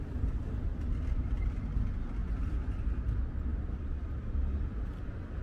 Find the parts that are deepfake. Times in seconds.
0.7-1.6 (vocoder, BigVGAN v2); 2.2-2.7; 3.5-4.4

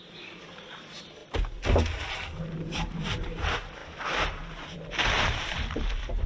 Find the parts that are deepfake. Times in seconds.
0.0-1.2 (vocoder, BigVGAN v2); 2.1-6.3

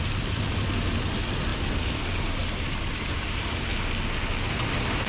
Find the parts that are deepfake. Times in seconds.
0.0-2.4 (vocoder, BigVGAN v2); 2.9-3.7; 4.6-5.1

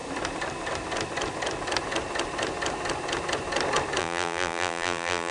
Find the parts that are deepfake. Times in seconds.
4.0-5.3 (vocoder, BigVGAN v2)